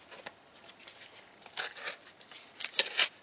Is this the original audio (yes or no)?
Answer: yes